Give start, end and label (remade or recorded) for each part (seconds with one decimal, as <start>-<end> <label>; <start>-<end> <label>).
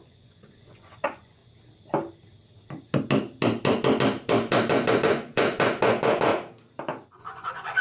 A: 0.0-1.4 remade; 1.4-4.7 recorded; 4.7-6.3 remade; 6.3-7.2 recorded; 7.2-7.8 remade